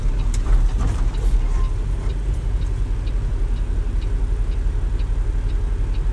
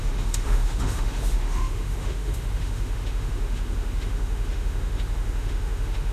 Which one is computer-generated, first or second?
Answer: second